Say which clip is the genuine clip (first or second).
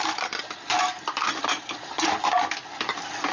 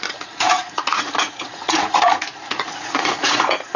first